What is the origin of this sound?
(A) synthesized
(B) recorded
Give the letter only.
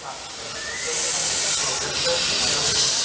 B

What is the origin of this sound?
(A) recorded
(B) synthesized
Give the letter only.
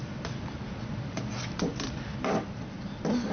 A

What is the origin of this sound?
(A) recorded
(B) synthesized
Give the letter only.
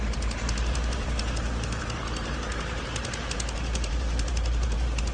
B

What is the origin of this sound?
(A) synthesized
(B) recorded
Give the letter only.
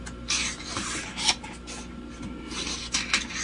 B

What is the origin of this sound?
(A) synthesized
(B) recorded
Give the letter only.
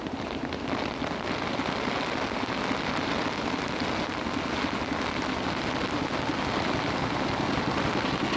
B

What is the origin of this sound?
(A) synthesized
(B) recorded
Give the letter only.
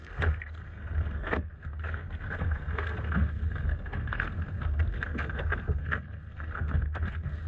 A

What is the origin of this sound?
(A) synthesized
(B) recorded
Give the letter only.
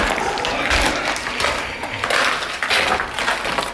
B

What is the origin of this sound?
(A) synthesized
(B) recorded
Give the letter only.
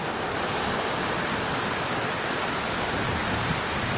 B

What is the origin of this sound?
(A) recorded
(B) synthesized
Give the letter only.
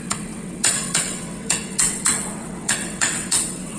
B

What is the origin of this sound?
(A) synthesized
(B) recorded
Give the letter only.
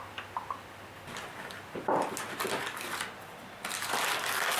B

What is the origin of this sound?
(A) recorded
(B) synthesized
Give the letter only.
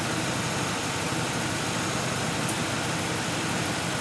A